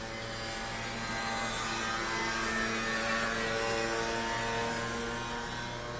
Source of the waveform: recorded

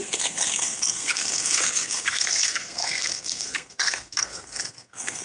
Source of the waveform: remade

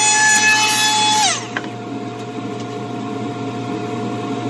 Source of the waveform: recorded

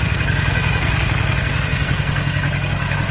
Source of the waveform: remade